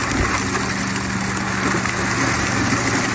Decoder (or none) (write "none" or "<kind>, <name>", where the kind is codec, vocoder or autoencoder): none